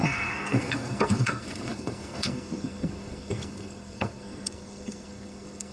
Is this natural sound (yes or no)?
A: no